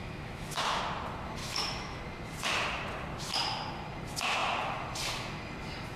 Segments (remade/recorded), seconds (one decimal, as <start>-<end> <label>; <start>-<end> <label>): 0.0-0.8 remade; 0.8-1.4 recorded; 1.4-2.0 remade; 2.0-6.0 recorded